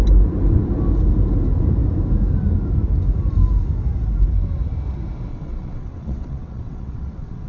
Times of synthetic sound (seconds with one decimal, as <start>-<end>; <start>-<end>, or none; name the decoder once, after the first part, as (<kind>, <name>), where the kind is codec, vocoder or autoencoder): 5.3-7.5 (vocoder, WaveNeXt)